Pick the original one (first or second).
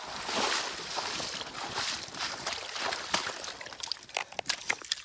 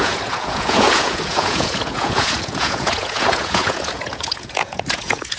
first